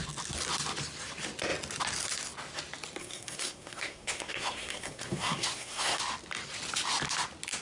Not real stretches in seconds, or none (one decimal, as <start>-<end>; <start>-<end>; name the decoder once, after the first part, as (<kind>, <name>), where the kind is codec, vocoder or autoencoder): 3.0-6.0 (codec, SNAC)